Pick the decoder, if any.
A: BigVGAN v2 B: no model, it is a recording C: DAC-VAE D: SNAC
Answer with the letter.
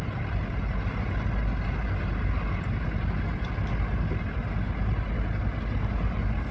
B